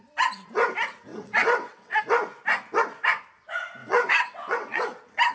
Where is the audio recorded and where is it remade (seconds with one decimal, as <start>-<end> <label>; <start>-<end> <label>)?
0.0-1.1 recorded; 1.1-2.0 remade; 2.0-3.8 recorded; 3.8-4.8 remade; 4.8-5.3 recorded